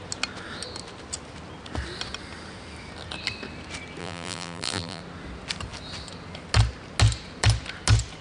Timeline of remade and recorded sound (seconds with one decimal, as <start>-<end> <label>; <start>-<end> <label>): 0.0-4.0 recorded; 4.0-5.0 remade; 5.0-8.2 recorded